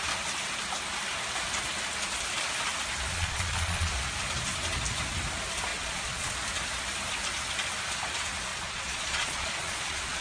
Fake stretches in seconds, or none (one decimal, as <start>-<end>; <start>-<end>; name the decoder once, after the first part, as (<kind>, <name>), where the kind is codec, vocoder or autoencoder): 3.1-3.9 (vocoder, Vocos); 5.7-6.3; 8.5-10.2